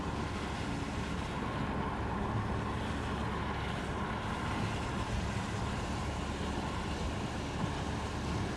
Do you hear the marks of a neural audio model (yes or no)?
no